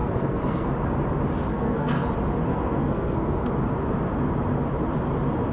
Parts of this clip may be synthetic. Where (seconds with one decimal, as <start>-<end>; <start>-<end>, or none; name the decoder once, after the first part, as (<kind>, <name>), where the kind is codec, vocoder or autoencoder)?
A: 0.0-0.7 (codec, SNAC); 1.5-2.1; 2.5-3.5